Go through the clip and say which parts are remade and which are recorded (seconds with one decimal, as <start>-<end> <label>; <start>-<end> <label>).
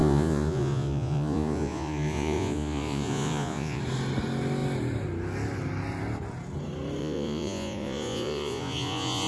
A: 0.0-3.8 remade; 3.8-7.0 recorded; 7.0-9.3 remade